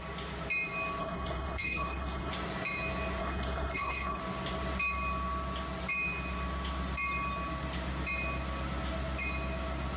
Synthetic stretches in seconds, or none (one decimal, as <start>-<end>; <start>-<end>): 1.0-2.3; 3.2-4.2